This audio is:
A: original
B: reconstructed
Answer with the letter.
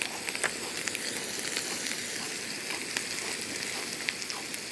A